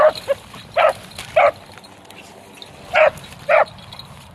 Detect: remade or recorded recorded